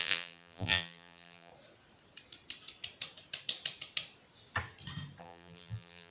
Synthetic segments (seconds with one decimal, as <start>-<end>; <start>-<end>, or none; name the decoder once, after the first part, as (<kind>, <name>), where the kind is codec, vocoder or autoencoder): 0.0-1.5 (vocoder, BigVGAN v2); 5.2-6.1